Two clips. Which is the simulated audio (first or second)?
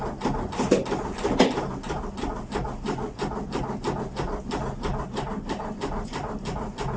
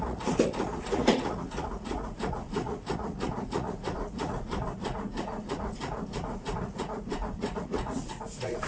second